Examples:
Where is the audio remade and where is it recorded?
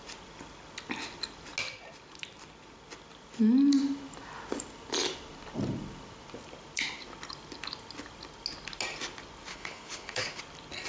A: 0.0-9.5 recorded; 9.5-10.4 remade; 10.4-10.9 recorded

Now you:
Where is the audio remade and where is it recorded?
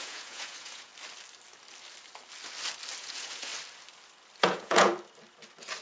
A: 0.0-0.9 remade; 0.9-3.0 recorded; 3.0-3.5 remade; 3.5-4.4 recorded; 4.4-4.9 remade; 4.9-5.8 recorded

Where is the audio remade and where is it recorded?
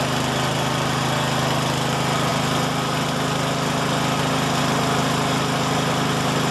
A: 0.0-6.5 recorded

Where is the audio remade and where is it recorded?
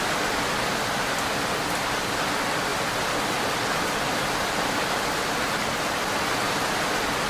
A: 0.0-7.3 recorded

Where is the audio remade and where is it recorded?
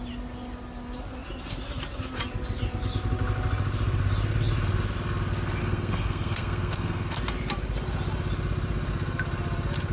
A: 0.0-5.6 recorded; 5.6-7.2 remade; 7.2-9.9 recorded